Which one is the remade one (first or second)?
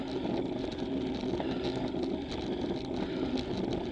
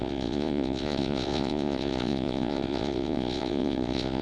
second